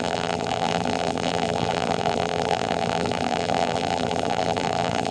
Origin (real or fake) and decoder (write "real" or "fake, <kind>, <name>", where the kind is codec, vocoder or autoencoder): fake, vocoder, BigVGAN v2